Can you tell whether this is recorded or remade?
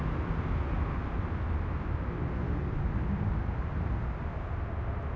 recorded